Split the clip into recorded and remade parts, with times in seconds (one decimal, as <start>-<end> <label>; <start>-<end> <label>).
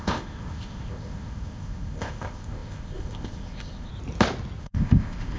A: 0.0-3.9 remade; 3.9-4.6 recorded; 4.6-5.4 remade